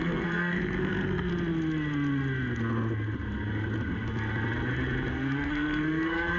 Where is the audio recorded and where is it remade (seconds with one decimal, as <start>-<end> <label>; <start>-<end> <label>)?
0.0-1.3 remade; 1.3-5.1 recorded; 5.1-6.4 remade